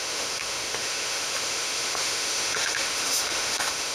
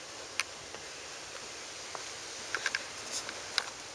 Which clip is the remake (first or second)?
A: first